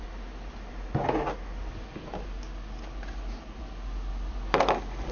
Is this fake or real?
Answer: real